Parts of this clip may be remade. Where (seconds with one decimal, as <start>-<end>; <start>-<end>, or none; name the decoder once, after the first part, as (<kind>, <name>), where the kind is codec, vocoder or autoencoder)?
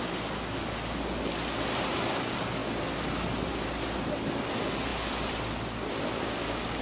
4.9-6.0 (vocoder, BigVGAN v2)